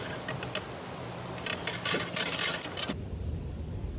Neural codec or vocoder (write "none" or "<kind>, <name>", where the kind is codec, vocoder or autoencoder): none